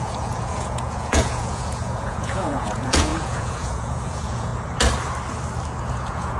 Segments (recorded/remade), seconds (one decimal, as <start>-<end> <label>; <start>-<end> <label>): 0.0-4.5 remade; 4.5-5.8 recorded; 5.8-6.4 remade